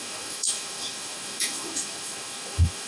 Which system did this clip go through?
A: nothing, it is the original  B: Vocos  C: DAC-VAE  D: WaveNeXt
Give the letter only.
C